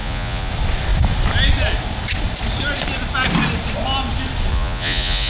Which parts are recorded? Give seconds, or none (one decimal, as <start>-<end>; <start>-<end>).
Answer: 0.5-4.5